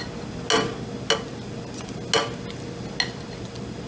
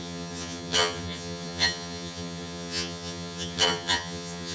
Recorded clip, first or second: first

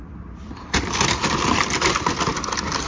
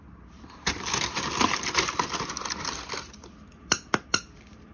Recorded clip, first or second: first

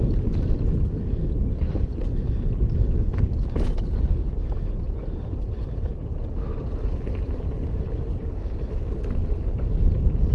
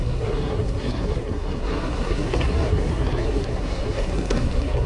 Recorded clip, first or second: first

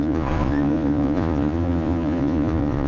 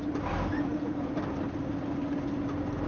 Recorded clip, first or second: second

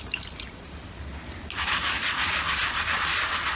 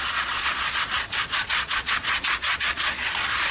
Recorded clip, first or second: first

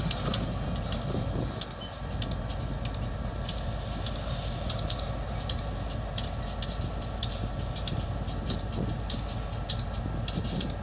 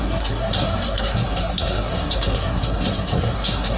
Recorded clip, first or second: first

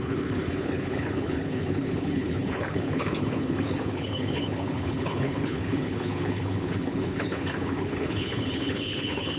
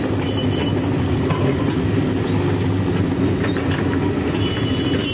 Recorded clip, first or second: second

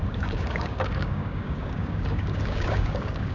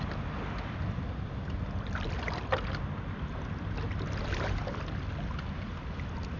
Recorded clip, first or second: second